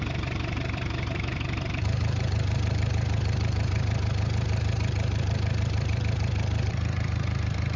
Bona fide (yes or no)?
no